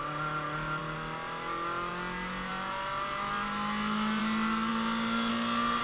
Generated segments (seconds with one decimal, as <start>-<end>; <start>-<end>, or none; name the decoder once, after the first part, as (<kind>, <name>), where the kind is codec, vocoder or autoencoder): none